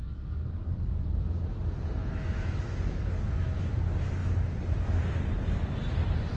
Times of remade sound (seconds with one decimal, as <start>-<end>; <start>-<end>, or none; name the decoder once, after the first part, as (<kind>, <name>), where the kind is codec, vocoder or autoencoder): 2.0-3.7 (autoencoder, DAC-VAE)